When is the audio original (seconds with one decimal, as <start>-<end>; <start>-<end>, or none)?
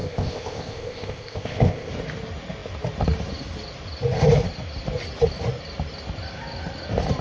1.9-7.2